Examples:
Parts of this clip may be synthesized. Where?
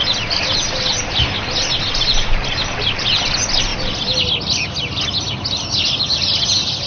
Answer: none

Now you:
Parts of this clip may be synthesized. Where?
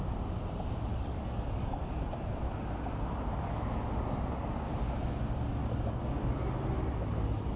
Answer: 0.9-1.8 (codec, DAC); 5.6-6.3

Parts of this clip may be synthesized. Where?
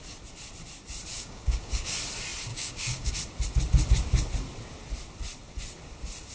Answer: 1.1-1.9 (codec, DAC); 2.5-3.1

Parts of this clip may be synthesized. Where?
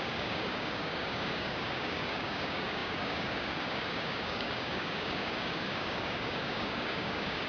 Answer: 0.0-7.5 (codec, DAC)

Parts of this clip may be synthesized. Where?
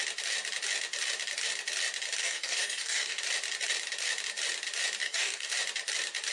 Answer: 2.2-3.2 (codec, DAC); 5.0-5.5